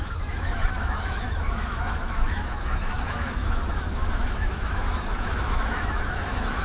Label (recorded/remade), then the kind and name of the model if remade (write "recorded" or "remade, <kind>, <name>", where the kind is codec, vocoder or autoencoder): remade, autoencoder, DAC-VAE